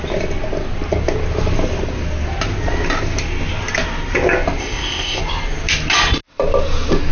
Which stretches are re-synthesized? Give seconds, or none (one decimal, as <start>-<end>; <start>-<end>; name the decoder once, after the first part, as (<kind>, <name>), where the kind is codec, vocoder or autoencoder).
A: 4.6-5.2 (codec, ZipCodec)

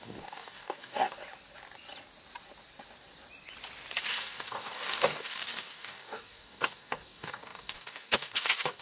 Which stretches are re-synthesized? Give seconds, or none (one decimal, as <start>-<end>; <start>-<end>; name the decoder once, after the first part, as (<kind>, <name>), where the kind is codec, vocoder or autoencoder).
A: 0.0-1.2 (codec, DAC); 4.0-8.8